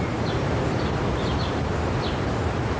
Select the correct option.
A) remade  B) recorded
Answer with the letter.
B